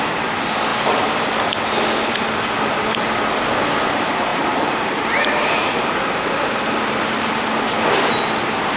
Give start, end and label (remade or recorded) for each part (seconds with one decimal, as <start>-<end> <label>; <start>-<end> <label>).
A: 0.0-4.3 recorded; 4.3-5.9 remade; 5.9-8.8 recorded